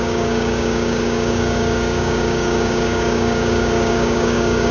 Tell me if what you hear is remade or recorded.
remade